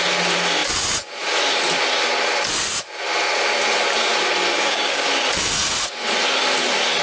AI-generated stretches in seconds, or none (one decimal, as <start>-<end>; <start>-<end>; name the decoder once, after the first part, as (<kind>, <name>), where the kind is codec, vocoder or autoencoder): 4.5-5.1 (codec, DAC)

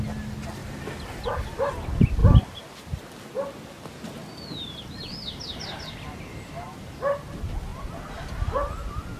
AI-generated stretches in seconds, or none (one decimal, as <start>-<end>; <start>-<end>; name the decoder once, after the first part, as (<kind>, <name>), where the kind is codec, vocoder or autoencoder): 0.6-1.7 (vocoder, BigVGAN v2); 2.2-3.0; 7.7-9.2

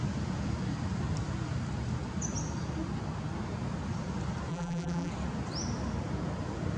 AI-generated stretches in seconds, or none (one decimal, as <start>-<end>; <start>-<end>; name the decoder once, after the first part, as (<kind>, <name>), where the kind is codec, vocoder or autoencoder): 4.5-5.1 (vocoder, BigVGAN v2)

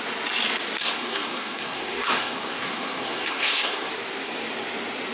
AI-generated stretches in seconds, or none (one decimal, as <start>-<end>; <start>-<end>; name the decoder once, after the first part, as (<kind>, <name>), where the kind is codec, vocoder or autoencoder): 0.8-3.9 (codec, SNAC)

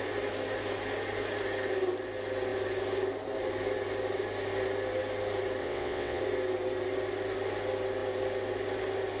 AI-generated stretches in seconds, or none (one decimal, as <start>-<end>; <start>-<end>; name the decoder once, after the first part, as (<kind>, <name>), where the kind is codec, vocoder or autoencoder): 5.6-6.2 (vocoder, WaveNeXt)

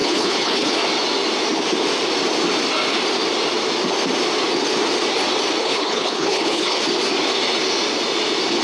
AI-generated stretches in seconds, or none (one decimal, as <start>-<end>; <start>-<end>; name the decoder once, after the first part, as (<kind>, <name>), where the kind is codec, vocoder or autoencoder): 0.0-0.7 (codec, HILCodec); 5.6-6.8

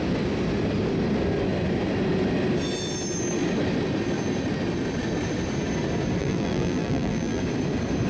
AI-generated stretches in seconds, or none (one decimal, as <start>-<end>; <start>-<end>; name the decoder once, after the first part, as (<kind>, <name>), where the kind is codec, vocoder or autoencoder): 6.2-7.4 (vocoder, BigVGAN v2)